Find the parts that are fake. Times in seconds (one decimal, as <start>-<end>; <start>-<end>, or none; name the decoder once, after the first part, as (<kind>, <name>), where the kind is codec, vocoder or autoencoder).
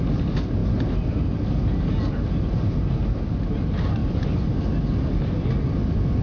none